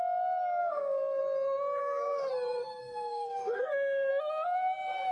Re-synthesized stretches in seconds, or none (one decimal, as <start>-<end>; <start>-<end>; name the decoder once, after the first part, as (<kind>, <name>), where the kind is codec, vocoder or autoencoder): 0.6-1.2 (codec, SNAC); 1.8-2.3; 2.8-4.1